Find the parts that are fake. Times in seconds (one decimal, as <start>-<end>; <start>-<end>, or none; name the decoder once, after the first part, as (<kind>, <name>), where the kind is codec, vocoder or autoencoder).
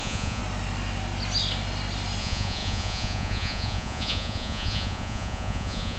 0.0-0.4 (vocoder, Vocos); 2.2-6.0